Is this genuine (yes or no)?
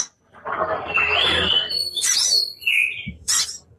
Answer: no